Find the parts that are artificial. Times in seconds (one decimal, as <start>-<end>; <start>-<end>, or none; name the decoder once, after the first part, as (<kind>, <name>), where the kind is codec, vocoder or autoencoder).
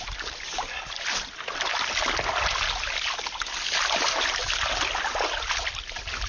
none